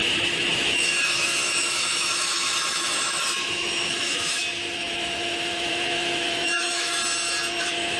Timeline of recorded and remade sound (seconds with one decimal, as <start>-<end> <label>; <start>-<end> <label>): 0.0-7.0 remade; 7.0-7.6 recorded; 7.6-8.0 remade